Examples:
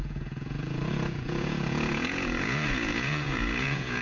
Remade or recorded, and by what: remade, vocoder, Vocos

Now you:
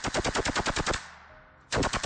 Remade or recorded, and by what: recorded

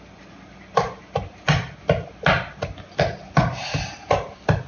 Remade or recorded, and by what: recorded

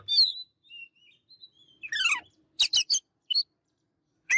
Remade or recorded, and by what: recorded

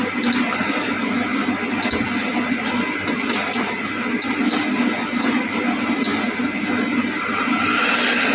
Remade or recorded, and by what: recorded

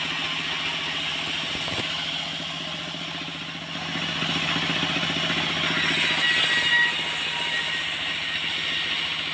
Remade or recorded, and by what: recorded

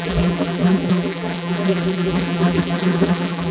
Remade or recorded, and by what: remade, vocoder, BigVGAN v2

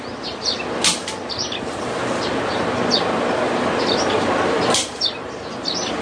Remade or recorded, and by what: recorded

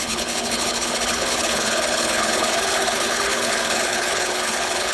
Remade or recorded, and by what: remade, codec, HILCodec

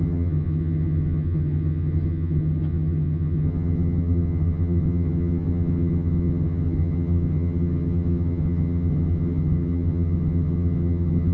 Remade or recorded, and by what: remade, vocoder, HiFi-GAN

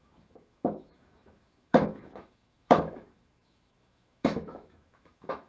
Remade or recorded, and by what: remade, autoencoder, DAC-VAE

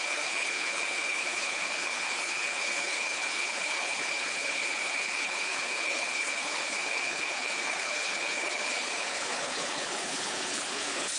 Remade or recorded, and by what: remade, codec, HILCodec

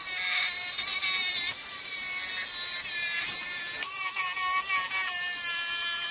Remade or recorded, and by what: recorded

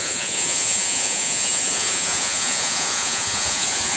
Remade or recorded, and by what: remade, vocoder, Vocos